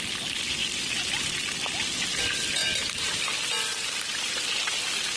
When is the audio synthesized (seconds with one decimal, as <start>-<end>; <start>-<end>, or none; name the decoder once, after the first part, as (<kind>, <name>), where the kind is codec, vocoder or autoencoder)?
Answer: 2.6-3.2 (vocoder, BigVGAN v2)